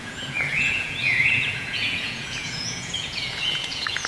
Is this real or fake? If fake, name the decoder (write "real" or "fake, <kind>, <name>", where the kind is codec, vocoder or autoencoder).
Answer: fake, vocoder, Vocos